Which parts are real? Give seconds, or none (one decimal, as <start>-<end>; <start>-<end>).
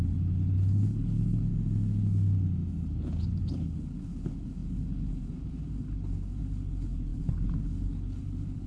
1.5-2.9